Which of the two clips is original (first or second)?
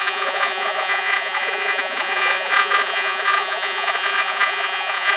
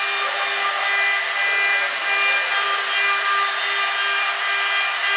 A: second